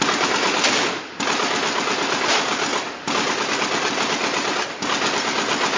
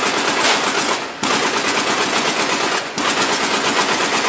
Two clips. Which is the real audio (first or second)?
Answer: first